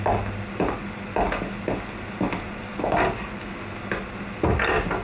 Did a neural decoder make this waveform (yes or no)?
no